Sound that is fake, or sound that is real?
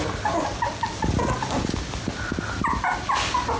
real